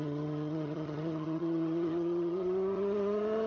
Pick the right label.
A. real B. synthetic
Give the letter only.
B